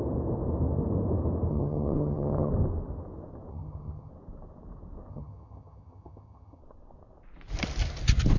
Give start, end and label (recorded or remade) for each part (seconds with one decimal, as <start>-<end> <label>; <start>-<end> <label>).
0.0-1.5 recorded; 1.5-2.5 remade; 2.5-3.5 recorded; 3.5-4.1 remade; 4.1-5.1 recorded; 5.1-6.6 remade; 6.6-8.4 recorded